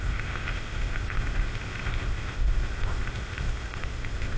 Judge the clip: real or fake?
fake